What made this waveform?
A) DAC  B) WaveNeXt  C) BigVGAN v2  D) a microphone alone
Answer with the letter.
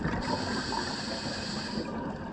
D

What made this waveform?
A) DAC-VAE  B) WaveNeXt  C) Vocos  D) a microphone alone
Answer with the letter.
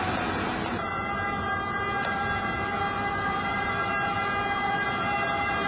D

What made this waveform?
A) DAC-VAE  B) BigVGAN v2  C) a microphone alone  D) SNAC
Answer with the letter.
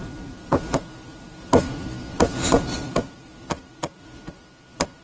C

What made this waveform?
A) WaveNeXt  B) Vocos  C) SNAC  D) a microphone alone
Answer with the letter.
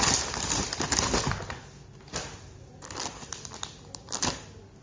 D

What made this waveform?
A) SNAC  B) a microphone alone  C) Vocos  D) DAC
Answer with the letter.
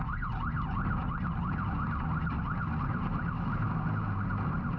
B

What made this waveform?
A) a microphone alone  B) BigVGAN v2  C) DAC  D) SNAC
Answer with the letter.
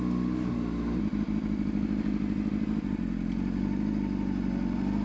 A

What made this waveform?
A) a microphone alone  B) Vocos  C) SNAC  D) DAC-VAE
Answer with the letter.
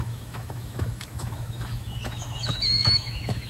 D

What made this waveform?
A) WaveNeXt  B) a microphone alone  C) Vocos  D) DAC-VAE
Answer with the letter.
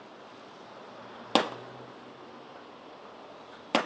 B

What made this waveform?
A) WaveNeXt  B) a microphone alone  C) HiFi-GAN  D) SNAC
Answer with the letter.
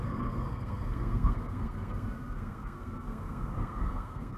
D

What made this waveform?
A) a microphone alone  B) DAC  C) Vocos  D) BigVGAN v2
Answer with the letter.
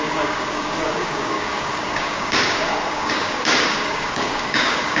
B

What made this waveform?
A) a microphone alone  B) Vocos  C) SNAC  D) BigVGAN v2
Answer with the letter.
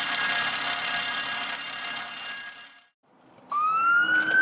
A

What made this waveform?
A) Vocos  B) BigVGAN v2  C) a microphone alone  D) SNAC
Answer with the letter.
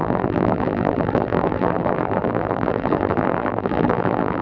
B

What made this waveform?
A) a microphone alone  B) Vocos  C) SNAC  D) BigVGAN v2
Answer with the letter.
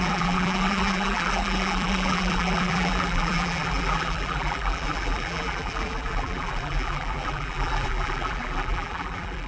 D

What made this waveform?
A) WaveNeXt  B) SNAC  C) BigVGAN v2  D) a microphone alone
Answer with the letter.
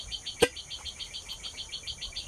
D